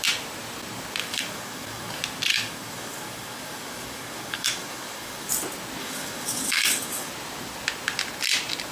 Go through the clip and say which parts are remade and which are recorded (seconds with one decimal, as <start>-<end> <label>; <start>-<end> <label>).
0.0-1.0 recorded; 1.0-1.9 remade; 1.9-2.3 recorded; 2.3-5.3 remade; 5.3-5.8 recorded; 5.8-7.1 remade; 7.1-8.7 recorded